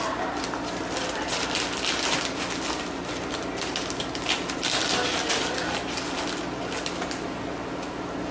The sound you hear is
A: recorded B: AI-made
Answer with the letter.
A